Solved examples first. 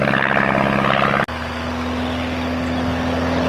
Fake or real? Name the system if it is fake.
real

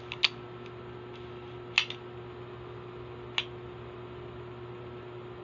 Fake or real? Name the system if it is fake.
real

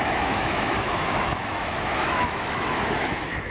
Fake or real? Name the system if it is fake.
fake, autoencoder, DAC-VAE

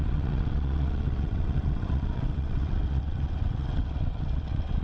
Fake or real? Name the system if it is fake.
fake, vocoder, WaveNeXt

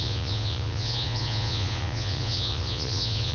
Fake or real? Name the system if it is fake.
fake, vocoder, Vocos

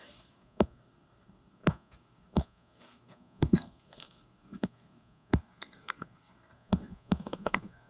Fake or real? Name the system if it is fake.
fake, codec, SNAC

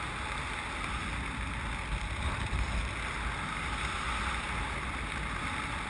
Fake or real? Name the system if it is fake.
real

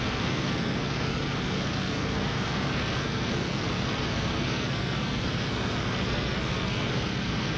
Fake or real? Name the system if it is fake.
fake, codec, SNAC